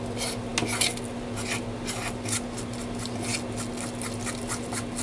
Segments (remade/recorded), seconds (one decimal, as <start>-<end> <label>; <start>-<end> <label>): 0.0-5.0 recorded